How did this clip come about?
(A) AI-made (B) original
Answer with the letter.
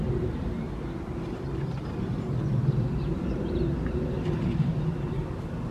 B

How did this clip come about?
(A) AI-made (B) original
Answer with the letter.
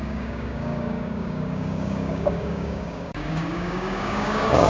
A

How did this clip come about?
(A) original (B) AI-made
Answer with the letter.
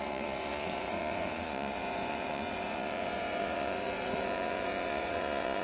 B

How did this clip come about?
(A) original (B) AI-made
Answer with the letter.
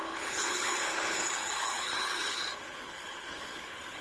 B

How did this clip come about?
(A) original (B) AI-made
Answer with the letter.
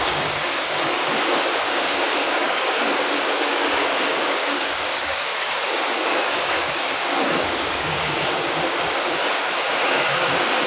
B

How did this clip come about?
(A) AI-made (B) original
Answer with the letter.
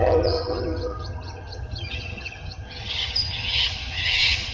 A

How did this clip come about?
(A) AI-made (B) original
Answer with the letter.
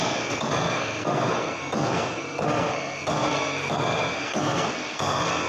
A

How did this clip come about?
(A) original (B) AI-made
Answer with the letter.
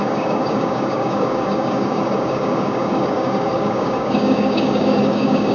B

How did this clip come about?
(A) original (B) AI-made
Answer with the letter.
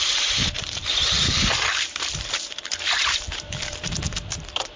B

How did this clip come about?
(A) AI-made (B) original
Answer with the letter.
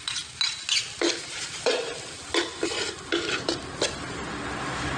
B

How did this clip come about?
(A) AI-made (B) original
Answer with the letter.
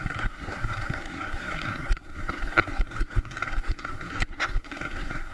A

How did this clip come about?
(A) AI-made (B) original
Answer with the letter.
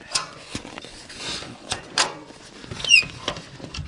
A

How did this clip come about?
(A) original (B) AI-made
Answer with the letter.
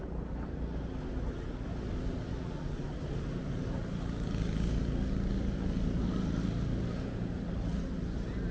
A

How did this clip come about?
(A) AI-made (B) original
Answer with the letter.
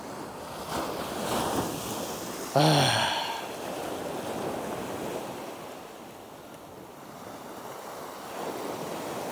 B